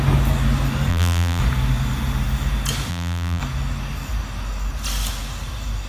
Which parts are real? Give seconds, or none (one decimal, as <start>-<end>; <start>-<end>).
0.0-0.9; 1.4-2.9; 3.4-5.9